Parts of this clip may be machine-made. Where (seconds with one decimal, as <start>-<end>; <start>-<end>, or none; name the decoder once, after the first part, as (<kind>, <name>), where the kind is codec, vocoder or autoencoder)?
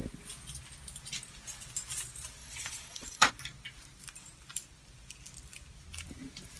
2.4-3.3 (vocoder, Vocos)